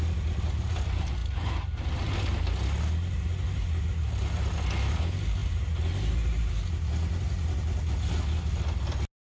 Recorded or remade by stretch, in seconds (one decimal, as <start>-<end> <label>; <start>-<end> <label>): 0.0-9.2 recorded